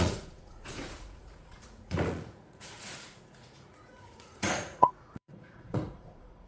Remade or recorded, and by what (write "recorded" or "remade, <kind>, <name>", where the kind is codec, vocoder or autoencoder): remade, vocoder, Vocos